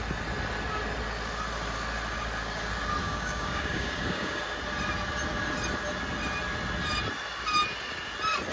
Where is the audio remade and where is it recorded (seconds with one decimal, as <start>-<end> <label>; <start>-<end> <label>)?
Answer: 0.0-3.0 recorded; 3.0-4.4 remade; 4.4-8.5 recorded